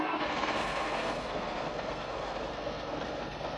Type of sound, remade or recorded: remade